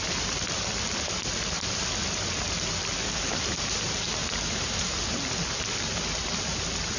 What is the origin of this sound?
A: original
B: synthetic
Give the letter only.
A